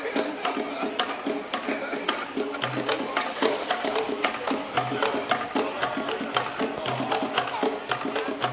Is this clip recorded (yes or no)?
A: yes